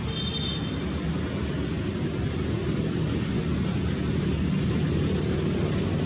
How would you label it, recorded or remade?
recorded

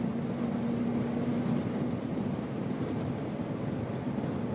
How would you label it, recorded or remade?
recorded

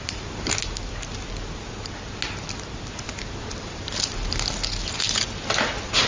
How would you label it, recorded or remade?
recorded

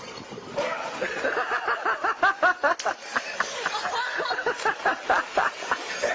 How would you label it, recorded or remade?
recorded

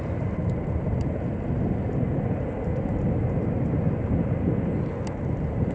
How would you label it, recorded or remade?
recorded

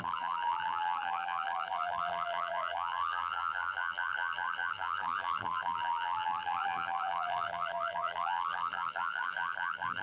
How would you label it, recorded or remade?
remade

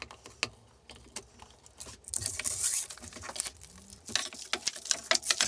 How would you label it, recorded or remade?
recorded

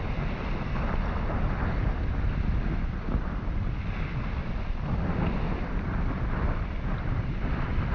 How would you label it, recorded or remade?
recorded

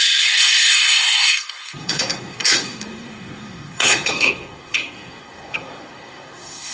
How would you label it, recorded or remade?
remade